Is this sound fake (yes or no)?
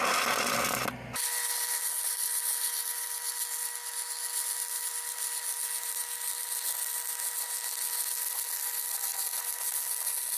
no